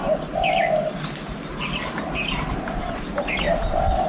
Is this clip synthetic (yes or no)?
no